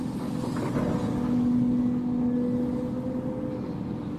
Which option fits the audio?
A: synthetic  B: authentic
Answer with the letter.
B